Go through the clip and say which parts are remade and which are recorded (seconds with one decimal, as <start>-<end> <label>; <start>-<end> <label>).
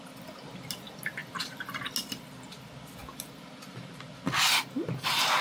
0.0-5.4 recorded